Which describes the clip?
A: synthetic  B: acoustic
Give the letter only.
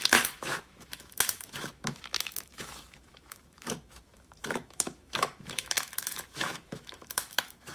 A